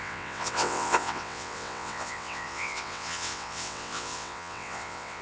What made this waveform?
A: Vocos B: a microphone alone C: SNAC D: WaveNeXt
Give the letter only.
D